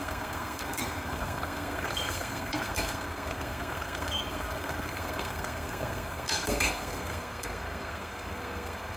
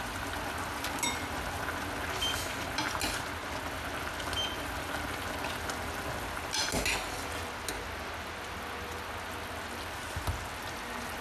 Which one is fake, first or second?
first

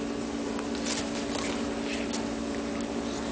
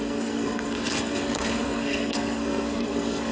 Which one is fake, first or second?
second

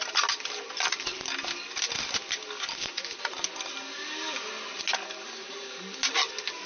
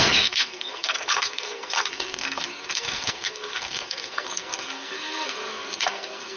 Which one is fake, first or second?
second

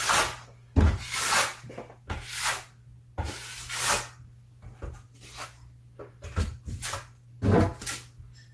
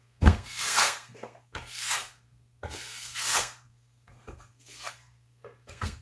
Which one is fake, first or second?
second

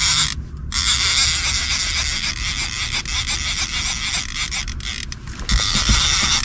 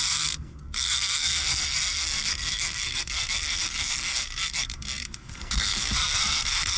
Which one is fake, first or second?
second